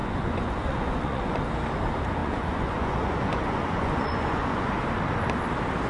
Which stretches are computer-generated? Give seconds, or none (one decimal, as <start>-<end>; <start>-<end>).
0.0-1.4; 2.2-4.7